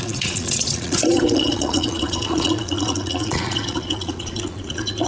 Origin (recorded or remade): remade